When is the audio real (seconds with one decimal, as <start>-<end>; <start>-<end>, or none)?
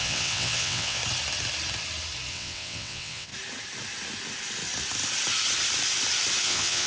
1.0-2.3; 3.3-6.4